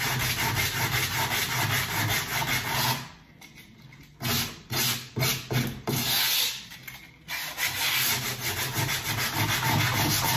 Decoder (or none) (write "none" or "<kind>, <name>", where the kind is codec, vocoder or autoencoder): none